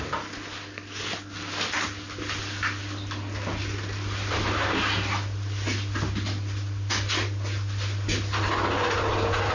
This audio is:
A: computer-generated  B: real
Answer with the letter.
B